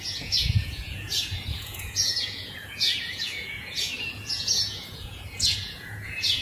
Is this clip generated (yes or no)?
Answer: yes